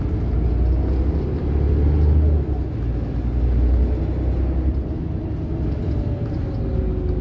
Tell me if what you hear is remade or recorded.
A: recorded